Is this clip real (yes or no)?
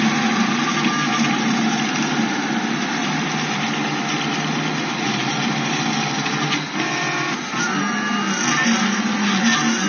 yes